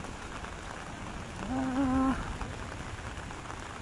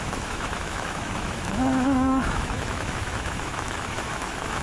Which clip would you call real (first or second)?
first